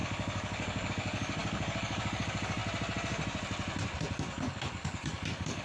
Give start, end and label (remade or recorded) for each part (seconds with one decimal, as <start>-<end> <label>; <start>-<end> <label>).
0.0-2.6 remade; 2.6-4.1 recorded; 4.1-5.6 remade